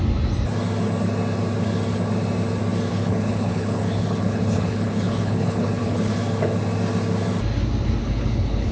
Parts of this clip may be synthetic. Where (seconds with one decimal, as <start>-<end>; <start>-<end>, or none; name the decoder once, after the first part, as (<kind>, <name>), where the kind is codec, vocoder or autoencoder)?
2.9-6.1 (codec, HILCodec); 8.0-8.7